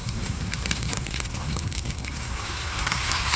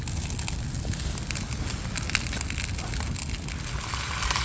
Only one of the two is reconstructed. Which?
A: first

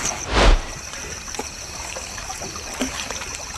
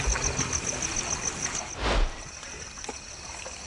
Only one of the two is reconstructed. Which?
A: first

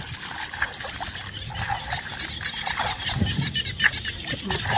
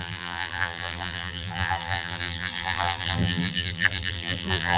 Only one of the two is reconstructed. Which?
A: second